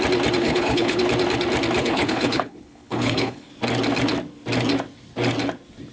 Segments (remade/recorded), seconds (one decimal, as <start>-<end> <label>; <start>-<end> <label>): 0.0-0.4 recorded; 0.4-1.0 remade; 1.0-1.8 recorded; 1.8-3.5 remade; 3.5-5.9 recorded